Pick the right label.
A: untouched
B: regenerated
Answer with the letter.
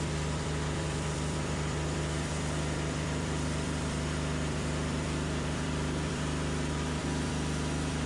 B